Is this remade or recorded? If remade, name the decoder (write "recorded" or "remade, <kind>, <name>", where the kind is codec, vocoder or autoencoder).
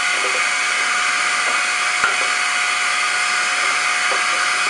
recorded